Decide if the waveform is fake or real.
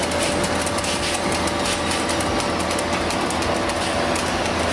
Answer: real